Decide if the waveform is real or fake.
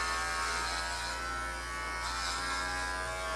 real